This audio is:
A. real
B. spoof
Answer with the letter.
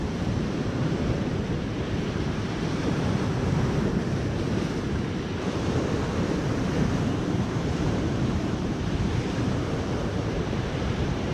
B